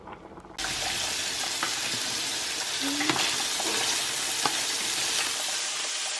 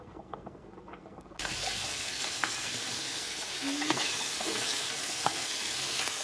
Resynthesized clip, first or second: second